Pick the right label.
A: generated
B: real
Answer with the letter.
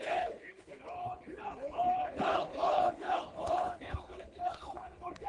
A